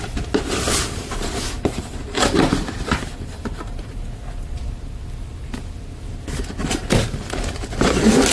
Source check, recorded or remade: recorded